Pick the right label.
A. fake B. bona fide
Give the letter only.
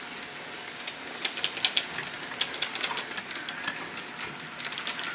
B